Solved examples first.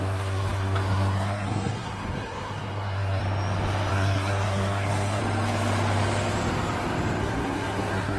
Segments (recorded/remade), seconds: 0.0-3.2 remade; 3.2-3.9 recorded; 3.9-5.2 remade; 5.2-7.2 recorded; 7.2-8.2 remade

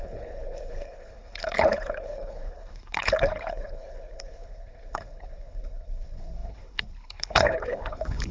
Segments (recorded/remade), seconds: 0.0-8.3 remade

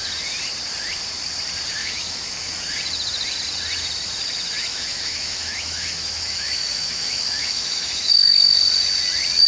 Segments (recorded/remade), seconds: 0.0-1.8 recorded; 1.8-2.6 remade; 2.6-4.7 recorded; 4.7-8.6 remade; 8.6-9.5 recorded

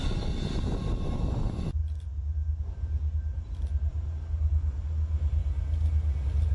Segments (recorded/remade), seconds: 0.0-6.5 recorded